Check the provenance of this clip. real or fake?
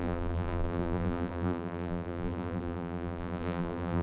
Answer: fake